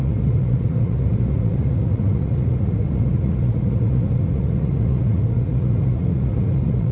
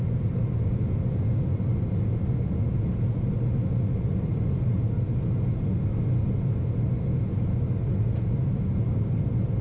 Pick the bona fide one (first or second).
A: second